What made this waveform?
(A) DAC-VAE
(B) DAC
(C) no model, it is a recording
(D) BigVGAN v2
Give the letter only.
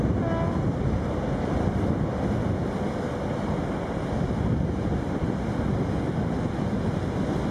C